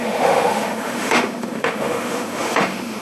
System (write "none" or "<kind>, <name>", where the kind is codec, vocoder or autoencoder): autoencoder, DAC-VAE